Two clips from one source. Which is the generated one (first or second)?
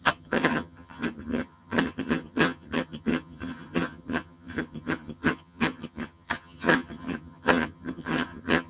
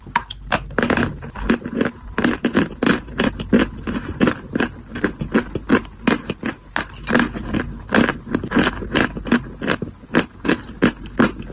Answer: first